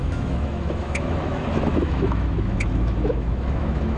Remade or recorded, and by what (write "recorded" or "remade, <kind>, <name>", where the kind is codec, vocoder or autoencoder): remade, autoencoder, DAC-VAE